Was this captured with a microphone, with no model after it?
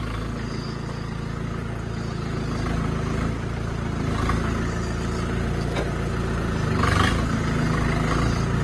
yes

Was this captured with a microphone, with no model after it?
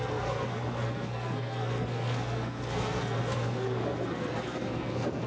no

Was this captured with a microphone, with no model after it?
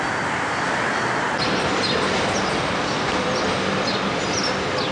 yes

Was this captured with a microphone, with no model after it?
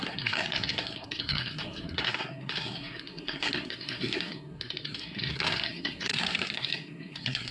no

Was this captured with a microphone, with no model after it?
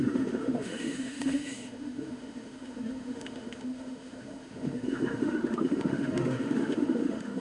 no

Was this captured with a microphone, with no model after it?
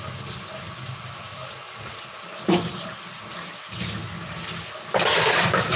yes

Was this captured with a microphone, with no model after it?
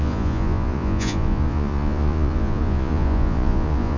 no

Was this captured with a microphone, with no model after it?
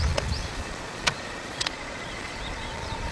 no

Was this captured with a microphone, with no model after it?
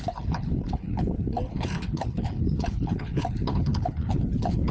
no